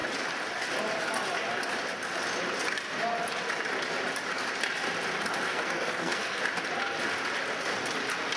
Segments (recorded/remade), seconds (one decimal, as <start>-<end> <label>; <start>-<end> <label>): 0.0-5.5 recorded; 5.5-6.4 remade; 6.4-8.4 recorded